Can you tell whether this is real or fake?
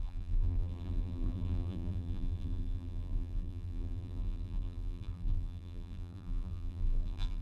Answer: fake